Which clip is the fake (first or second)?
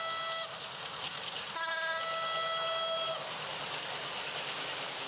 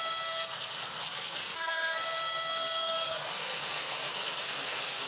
second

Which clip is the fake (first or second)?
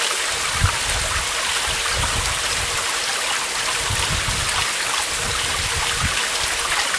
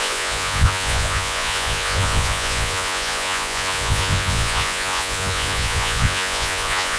second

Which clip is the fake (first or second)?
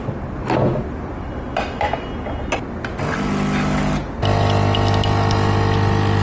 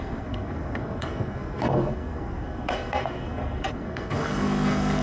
second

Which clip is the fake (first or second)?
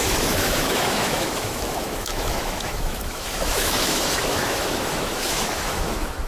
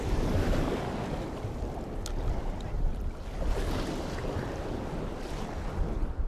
first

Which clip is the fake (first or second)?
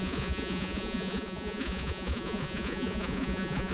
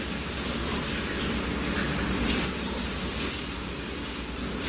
first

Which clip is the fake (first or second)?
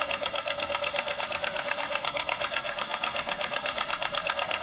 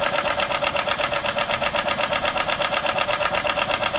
first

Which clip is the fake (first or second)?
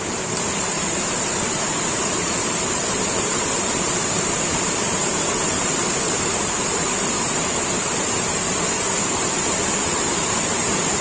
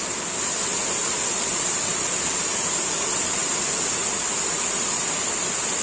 first